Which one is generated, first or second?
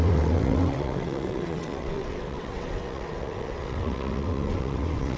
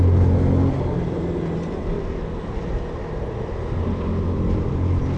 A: first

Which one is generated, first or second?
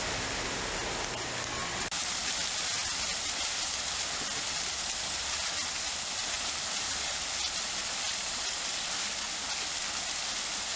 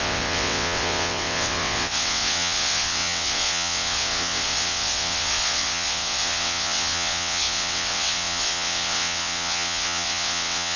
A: second